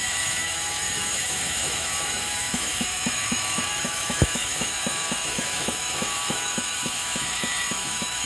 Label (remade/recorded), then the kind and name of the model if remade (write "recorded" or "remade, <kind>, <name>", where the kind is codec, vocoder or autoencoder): remade, autoencoder, DAC-VAE